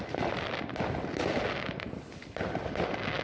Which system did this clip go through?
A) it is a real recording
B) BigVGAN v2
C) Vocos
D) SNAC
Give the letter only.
A